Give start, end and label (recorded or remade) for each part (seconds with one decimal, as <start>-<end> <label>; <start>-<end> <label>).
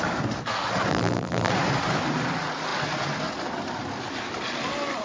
0.0-0.9 recorded; 0.9-1.5 remade; 1.5-5.0 recorded